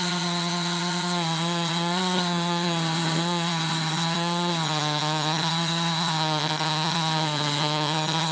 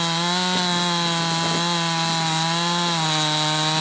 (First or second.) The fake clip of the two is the first